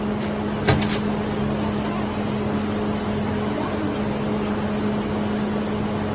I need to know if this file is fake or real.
real